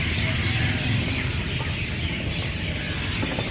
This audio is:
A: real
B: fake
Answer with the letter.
A